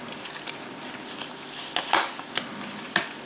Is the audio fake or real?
real